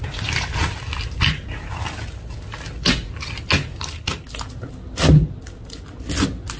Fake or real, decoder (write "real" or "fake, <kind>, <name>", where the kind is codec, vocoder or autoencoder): real